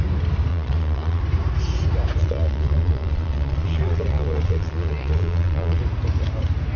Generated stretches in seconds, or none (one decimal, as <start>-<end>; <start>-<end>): 0.5-1.2; 2.2-5.8

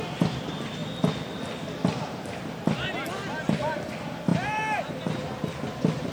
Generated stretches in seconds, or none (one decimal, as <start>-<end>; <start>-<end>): none

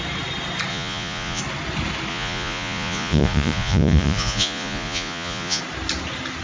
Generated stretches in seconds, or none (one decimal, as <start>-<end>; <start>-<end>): 0.7-1.4; 2.1-5.6

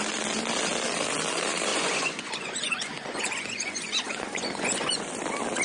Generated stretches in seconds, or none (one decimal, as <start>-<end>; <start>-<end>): 1.7-5.1

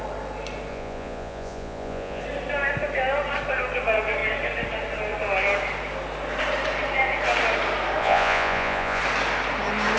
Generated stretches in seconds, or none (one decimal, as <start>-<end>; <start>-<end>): 0.7-2.2; 8.0-9.0

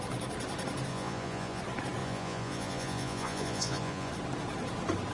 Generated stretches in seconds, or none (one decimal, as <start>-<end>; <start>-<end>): 0.9-1.6; 2.0-4.1

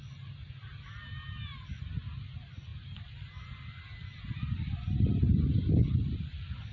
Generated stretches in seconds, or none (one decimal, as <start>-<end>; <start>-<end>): none

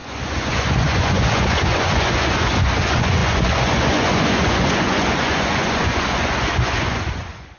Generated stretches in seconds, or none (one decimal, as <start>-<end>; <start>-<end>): 0.0-7.6